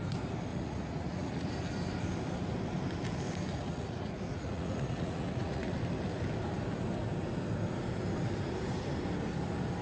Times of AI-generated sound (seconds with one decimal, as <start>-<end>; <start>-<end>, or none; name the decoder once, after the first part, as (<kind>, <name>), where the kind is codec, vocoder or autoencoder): 0.5-1.5 (vocoder, Vocos); 3.5-5.8